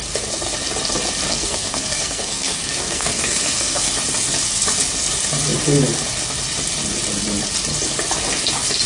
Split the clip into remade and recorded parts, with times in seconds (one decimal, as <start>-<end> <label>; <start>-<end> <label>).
0.0-1.3 recorded; 1.3-3.9 remade; 3.9-8.9 recorded